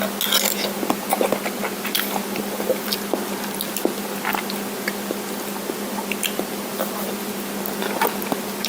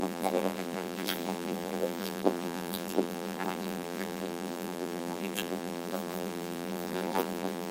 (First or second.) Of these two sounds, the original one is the first